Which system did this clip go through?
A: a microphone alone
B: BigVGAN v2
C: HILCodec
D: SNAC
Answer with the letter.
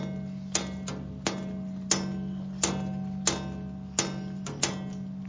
A